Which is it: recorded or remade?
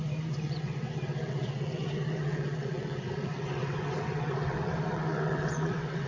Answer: remade